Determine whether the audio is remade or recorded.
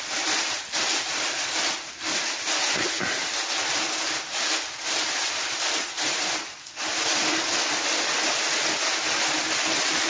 recorded